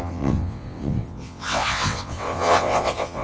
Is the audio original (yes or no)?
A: no